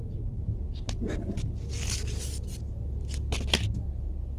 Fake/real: real